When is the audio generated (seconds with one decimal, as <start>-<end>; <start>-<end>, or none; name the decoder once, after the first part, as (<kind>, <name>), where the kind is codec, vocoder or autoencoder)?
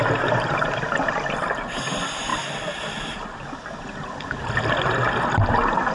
none